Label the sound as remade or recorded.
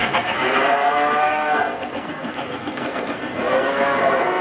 remade